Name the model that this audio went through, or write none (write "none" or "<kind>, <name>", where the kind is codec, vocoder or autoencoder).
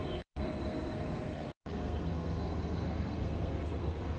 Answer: codec, SNAC